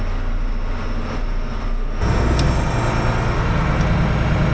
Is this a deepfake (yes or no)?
no